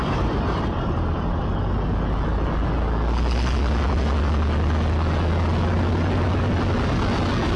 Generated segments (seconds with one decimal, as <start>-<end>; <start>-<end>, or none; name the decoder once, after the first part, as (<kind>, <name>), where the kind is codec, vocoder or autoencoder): 0.0-1.4 (vocoder, BigVGAN v2)